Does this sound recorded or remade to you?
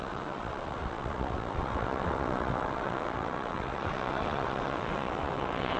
remade